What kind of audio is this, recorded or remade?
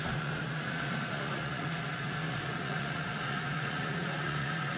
remade